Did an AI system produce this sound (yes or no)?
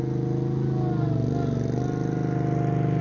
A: no